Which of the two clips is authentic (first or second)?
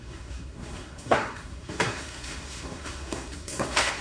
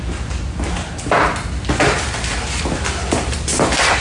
second